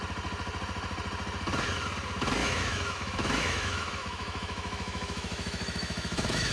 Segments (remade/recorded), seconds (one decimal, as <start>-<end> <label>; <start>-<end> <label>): 0.0-2.4 recorded; 2.4-6.5 remade